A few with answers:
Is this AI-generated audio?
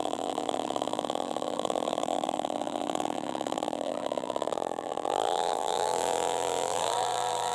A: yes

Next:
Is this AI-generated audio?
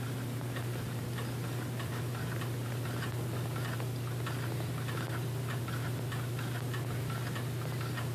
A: no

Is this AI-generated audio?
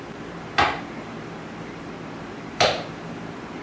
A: yes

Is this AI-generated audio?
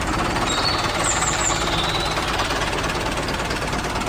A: yes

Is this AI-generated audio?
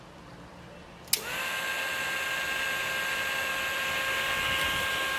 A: no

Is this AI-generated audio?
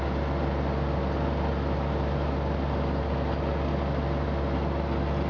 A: no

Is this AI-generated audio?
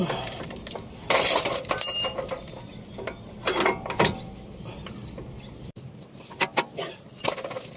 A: no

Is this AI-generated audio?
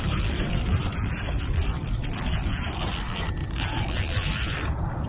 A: yes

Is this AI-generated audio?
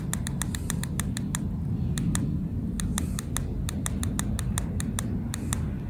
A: no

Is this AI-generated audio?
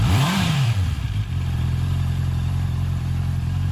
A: yes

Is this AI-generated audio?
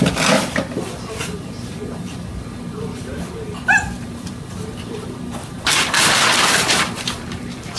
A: yes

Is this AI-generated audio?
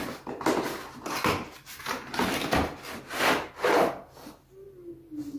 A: no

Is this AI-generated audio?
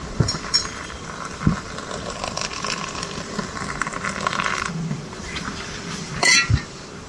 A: yes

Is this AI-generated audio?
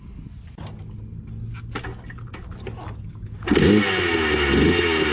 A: no